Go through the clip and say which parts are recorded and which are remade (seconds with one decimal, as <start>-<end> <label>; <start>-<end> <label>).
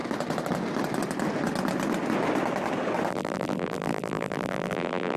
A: 0.0-3.1 recorded; 3.1-5.2 remade